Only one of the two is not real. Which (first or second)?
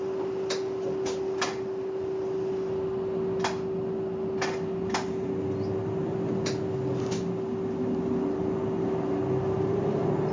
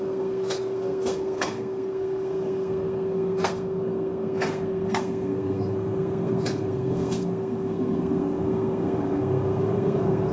second